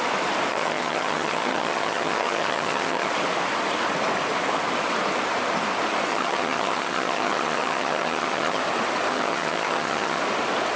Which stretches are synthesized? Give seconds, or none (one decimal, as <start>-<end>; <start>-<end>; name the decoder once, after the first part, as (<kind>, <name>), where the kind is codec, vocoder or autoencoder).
0.5-3.1 (vocoder, HiFi-GAN); 6.1-8.6; 9.1-10.2